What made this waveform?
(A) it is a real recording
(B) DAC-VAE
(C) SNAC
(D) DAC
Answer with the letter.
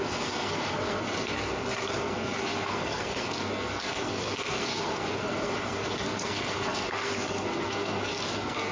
C